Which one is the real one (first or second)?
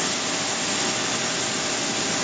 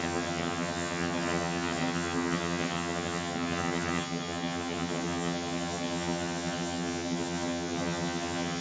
first